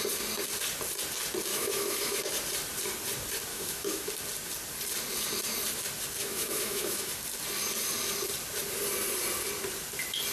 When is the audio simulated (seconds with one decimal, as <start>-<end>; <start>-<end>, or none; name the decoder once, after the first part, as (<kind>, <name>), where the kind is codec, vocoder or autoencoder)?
1.5-2.2 (autoencoder, DAC-VAE); 3.5-4.1; 6.2-7.1